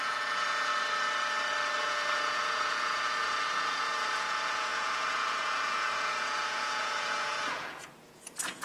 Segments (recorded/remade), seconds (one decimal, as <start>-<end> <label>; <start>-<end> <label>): 0.0-0.7 remade; 0.7-1.8 recorded; 1.8-8.6 remade

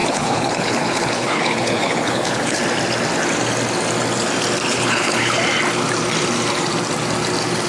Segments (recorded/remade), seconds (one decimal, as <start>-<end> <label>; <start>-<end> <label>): 0.0-2.6 remade; 2.6-4.7 recorded; 4.7-5.3 remade; 5.3-7.7 recorded